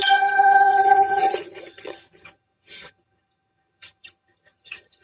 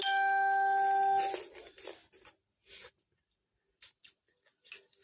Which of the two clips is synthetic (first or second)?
first